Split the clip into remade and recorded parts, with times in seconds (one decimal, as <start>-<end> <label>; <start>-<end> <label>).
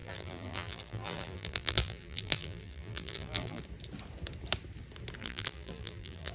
0.0-3.6 remade; 3.6-5.2 recorded; 5.2-6.3 remade